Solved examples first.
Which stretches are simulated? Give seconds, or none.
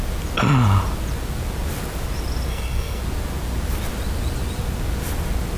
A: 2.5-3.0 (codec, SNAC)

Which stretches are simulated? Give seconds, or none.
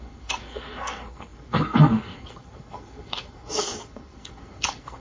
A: 0.0-5.0 (codec, SNAC)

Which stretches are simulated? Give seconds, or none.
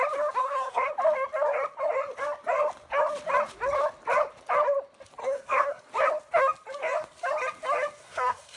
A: 0.4-0.9 (codec, SNAC); 5.2-5.8; 8.0-8.6